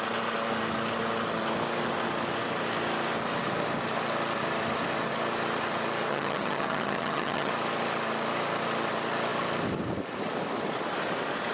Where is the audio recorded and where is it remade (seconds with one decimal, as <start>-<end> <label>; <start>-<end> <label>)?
0.0-6.1 recorded; 6.1-7.5 remade; 7.5-11.5 recorded